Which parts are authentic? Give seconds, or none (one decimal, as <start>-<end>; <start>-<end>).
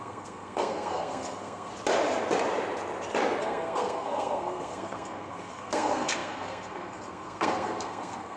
1.7-3.4